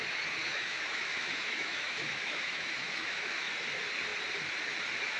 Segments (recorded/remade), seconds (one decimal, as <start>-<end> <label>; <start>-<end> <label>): 0.0-0.4 recorded; 0.4-3.5 remade; 3.5-5.2 recorded